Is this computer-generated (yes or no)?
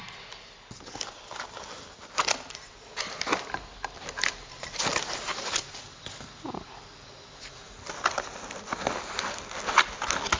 no